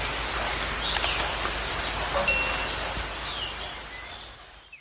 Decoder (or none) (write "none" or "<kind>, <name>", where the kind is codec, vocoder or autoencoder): none